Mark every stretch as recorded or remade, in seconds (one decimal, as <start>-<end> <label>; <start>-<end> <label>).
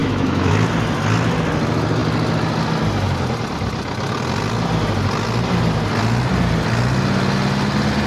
0.0-0.5 remade; 0.5-8.1 recorded